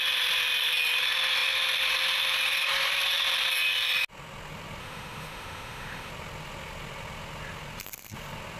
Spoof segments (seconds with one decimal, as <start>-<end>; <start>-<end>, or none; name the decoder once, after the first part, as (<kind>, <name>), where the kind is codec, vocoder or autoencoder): 4.8-6.1 (autoencoder, DAC-VAE)